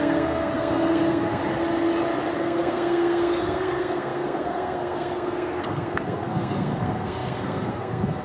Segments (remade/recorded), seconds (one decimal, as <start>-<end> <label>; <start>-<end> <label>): 0.0-1.4 remade; 1.4-2.4 recorded; 2.4-8.2 remade